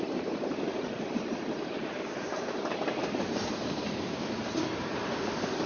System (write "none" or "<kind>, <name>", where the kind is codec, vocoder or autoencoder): vocoder, BigVGAN v2